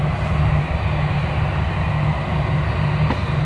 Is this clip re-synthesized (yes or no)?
no